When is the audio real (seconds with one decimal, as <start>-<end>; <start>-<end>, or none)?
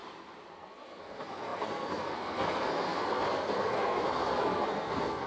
0.0-0.5